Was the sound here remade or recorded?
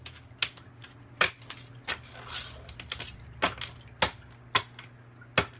recorded